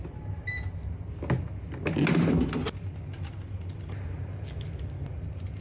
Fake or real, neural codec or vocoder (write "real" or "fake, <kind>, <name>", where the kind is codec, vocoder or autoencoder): real